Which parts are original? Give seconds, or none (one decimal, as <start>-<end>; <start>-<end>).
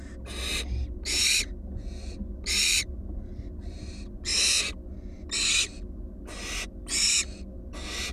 0.0-8.1